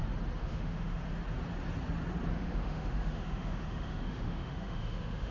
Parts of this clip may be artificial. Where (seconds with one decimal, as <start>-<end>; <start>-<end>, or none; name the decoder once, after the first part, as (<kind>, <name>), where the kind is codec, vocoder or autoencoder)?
0.4-1.0 (autoencoder, DAC-VAE); 2.3-5.3